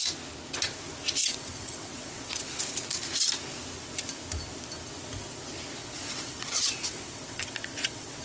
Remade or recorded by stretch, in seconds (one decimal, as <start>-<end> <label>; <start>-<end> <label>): 0.0-1.2 recorded; 1.2-2.6 remade; 2.6-5.8 recorded; 5.8-8.2 remade